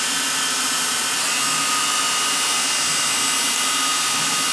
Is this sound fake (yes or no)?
no